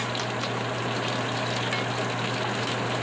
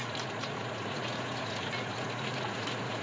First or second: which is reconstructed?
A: second